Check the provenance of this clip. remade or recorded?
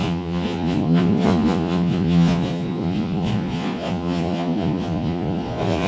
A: remade